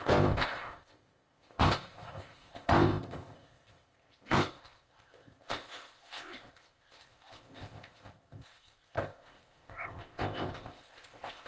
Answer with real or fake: fake